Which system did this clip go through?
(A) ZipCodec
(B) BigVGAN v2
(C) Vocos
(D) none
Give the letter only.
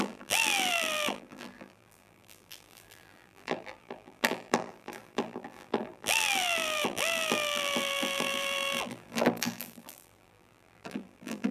B